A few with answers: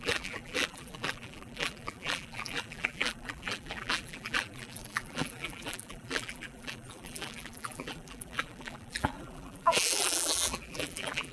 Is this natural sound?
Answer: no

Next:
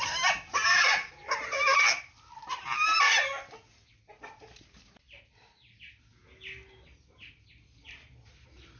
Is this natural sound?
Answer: yes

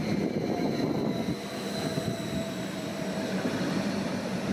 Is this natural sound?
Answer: no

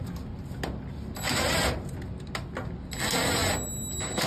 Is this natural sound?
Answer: yes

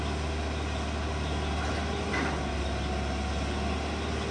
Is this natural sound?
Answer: yes